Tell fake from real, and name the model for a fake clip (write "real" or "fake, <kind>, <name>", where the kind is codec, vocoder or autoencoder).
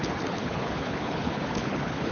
fake, codec, HILCodec